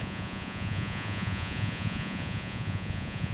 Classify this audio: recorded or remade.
remade